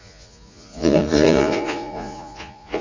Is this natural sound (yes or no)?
no